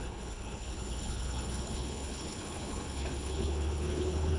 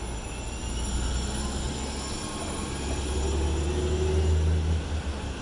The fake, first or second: first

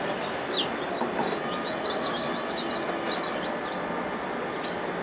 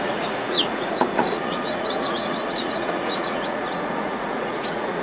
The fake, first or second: second